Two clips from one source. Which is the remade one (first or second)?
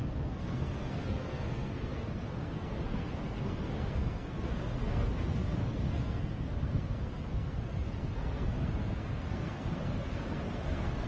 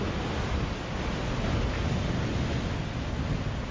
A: first